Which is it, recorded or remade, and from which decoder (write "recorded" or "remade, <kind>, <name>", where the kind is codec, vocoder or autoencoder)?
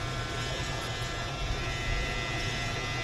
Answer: recorded